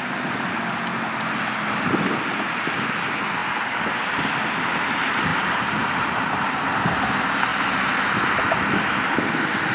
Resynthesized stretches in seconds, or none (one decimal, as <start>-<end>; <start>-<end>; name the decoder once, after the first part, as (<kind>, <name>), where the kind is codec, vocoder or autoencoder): 5.3-6.6 (vocoder, BigVGAN v2); 7.5-8.4